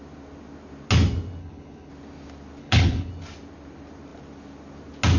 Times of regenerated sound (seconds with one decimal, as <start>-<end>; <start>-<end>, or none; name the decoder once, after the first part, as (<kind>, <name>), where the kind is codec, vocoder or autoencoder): 1.4-1.9 (codec, HILCodec); 2.6-3.1